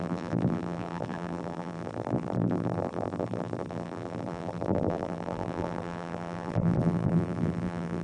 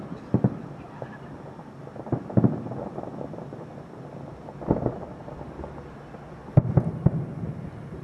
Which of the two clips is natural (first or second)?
second